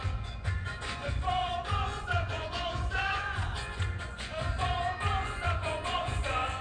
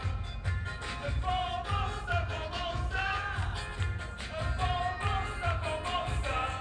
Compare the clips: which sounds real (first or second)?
second